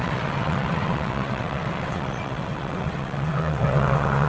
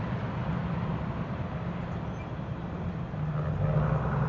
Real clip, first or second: second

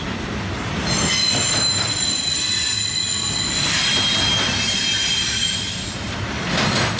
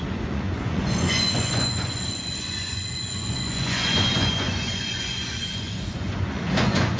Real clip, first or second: first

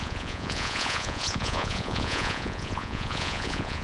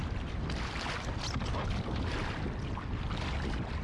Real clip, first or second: second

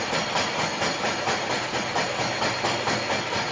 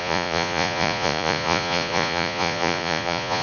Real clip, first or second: first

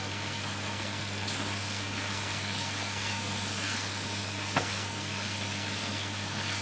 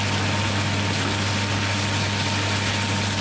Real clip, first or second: second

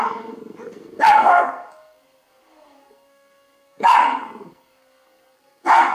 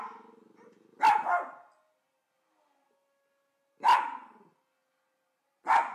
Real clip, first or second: second